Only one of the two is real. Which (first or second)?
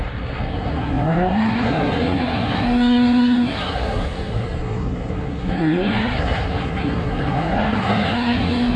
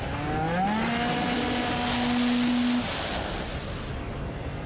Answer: second